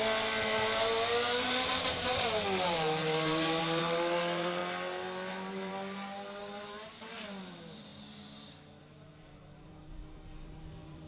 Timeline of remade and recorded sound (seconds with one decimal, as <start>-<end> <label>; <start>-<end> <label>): 0.0-4.6 remade; 4.6-5.3 recorded; 5.3-7.9 remade; 7.9-8.8 recorded; 8.8-11.1 remade